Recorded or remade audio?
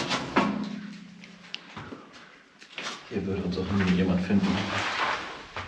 recorded